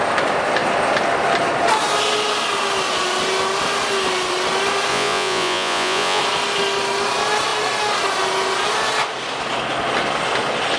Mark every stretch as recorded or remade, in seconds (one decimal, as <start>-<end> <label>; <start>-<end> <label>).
0.0-4.9 recorded; 4.9-6.2 remade; 6.2-10.8 recorded

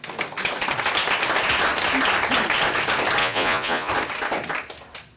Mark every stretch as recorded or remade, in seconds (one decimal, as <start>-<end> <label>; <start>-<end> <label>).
0.0-3.2 recorded; 3.2-3.9 remade; 3.9-5.2 recorded

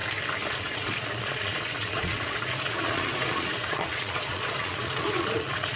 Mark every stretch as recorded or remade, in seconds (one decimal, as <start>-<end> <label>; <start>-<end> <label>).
0.0-0.5 recorded; 0.5-5.8 remade

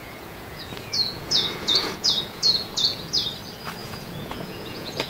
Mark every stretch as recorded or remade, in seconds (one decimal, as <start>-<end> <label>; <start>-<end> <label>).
0.0-3.1 remade; 3.1-3.8 recorded; 3.8-5.1 remade

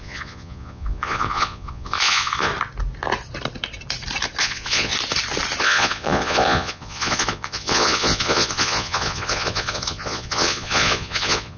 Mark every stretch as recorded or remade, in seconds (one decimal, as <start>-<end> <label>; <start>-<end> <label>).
0.0-2.5 remade; 2.5-4.4 recorded; 4.4-4.9 remade; 4.9-5.6 recorded; 5.6-11.6 remade

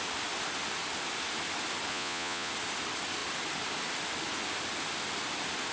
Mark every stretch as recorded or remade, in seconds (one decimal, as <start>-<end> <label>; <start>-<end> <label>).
0.0-1.9 recorded; 1.9-2.5 remade; 2.5-5.7 recorded